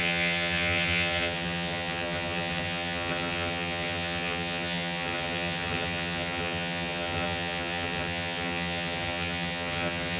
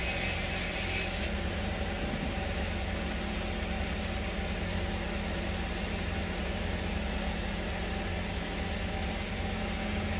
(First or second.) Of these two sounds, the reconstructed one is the first